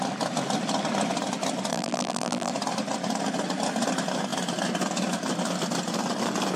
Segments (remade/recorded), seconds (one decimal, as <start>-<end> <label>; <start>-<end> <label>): 0.0-1.7 recorded; 1.7-2.5 remade; 2.5-6.6 recorded